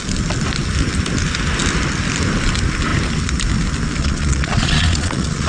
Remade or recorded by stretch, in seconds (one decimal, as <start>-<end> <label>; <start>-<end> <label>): 0.0-4.0 recorded; 4.0-5.5 remade